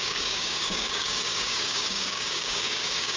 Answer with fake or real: fake